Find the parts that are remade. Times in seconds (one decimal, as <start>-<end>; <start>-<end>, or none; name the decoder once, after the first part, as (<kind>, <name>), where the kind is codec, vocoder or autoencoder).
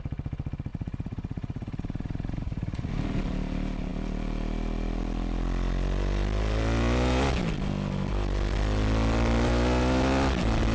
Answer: 0.7-2.9 (vocoder, Vocos)